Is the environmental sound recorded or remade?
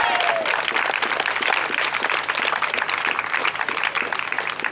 recorded